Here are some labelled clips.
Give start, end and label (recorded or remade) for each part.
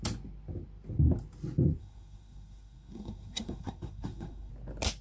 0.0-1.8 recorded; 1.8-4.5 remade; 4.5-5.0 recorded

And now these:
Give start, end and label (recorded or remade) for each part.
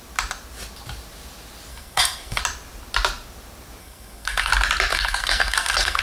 0.0-1.7 recorded; 1.7-2.4 remade; 2.4-3.8 recorded; 3.8-4.5 remade; 4.5-4.9 recorded; 4.9-6.0 remade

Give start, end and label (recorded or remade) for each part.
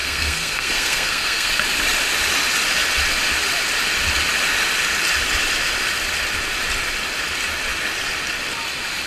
0.0-1.5 remade; 1.5-9.1 recorded